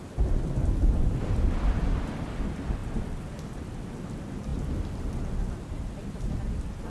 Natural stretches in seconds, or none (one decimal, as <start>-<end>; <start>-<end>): 0.0-6.9